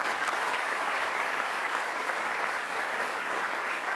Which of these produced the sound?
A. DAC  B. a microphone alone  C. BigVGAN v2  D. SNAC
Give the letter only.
A